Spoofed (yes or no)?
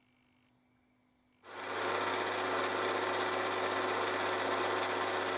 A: no